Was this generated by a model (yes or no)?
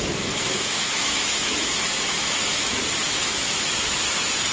yes